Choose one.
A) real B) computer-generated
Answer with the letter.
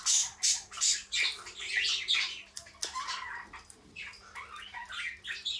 A